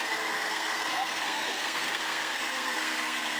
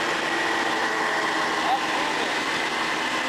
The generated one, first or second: first